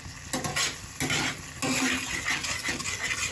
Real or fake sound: real